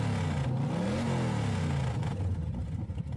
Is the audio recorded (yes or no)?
yes